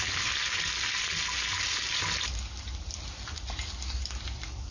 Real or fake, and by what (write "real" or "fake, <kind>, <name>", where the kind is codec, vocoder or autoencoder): real